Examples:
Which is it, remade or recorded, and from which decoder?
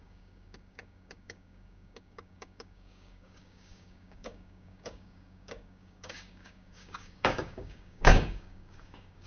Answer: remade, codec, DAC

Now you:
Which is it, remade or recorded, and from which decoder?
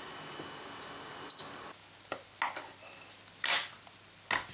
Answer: recorded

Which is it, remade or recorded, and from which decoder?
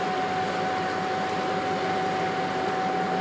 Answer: recorded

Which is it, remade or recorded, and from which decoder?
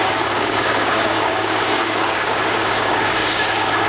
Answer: remade, codec, DAC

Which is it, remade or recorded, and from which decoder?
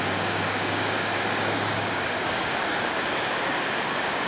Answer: remade, codec, DAC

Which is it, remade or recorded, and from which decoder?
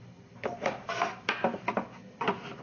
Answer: recorded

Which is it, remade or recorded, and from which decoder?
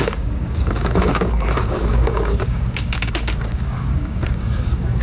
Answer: remade, codec, DAC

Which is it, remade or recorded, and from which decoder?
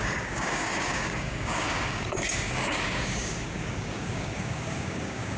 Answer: remade, codec, DAC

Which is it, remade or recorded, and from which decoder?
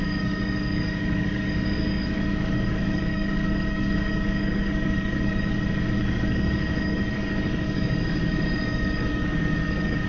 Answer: remade, codec, DAC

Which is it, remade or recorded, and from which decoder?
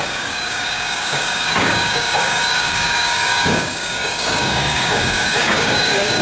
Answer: remade, codec, DAC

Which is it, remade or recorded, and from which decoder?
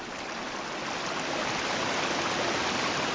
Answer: recorded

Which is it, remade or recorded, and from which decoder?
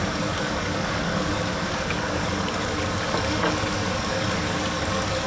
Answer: remade, codec, DAC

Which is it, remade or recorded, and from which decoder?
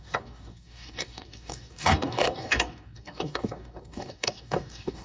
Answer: remade, codec, DAC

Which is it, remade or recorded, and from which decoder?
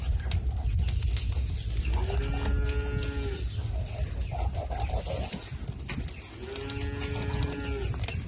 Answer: recorded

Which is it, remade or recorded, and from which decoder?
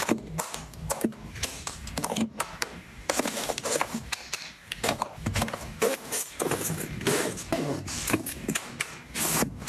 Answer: remade, codec, DAC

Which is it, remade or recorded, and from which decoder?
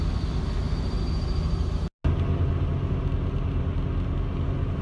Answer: recorded